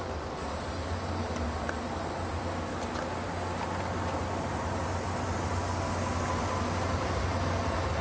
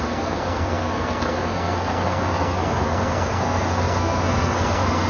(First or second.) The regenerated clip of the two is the second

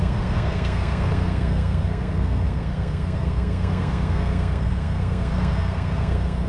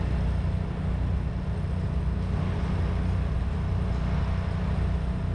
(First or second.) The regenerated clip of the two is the first